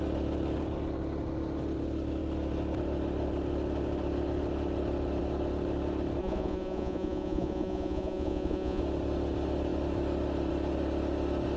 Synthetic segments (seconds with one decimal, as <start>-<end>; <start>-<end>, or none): 6.2-8.8